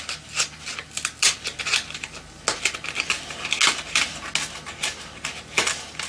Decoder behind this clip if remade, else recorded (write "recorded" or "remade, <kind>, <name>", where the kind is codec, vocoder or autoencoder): recorded